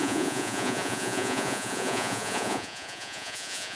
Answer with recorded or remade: remade